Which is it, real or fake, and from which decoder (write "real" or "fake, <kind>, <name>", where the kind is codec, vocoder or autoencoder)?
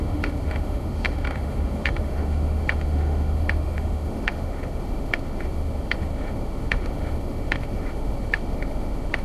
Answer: fake, autoencoder, DAC-VAE